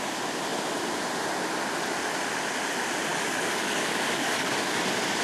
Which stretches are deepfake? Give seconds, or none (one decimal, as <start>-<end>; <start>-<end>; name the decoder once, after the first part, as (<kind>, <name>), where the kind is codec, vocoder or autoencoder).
3.1-4.8 (codec, DAC)